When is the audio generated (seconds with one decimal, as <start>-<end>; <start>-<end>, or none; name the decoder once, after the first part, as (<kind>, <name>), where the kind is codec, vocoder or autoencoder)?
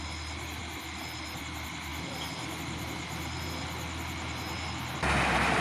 none